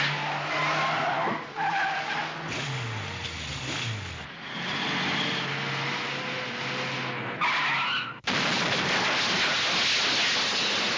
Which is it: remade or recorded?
recorded